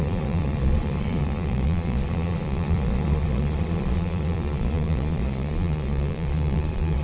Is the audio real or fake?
fake